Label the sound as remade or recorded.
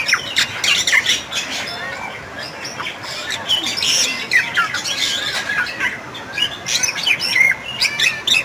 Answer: recorded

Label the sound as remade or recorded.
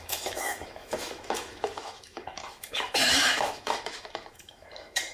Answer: remade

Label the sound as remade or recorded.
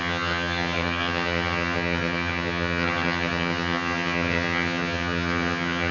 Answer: remade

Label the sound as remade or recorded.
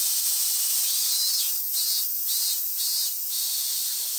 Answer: recorded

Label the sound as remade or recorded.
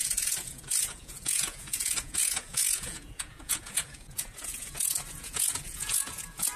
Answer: remade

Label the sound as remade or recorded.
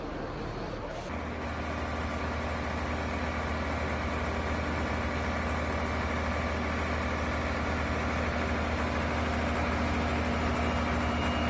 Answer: recorded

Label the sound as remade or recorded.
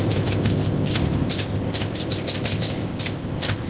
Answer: remade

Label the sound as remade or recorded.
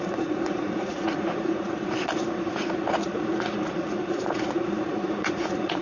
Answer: remade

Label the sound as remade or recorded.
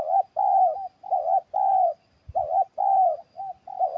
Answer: recorded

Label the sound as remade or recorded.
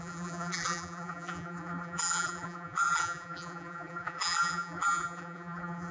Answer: remade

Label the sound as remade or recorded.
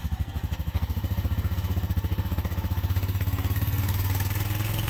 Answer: remade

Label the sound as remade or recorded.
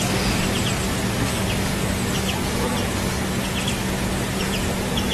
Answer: recorded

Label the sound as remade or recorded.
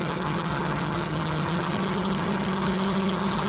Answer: remade